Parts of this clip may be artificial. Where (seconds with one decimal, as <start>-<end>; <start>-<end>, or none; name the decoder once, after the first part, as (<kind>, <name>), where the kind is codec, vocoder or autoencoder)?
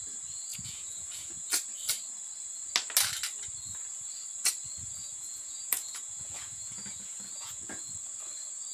0.5-1.5 (vocoder, Vocos); 4.8-7.9